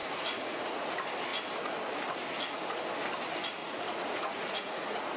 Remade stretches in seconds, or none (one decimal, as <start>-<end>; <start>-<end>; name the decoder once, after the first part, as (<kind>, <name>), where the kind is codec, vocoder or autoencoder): 0.0-0.9 (vocoder, Vocos); 3.6-5.2